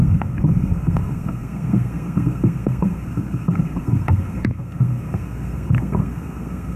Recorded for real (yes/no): no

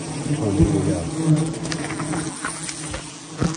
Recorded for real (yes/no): yes